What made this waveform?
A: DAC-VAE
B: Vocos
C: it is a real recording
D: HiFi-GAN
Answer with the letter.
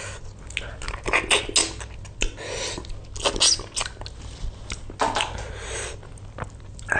C